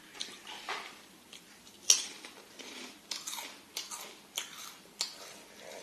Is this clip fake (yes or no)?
no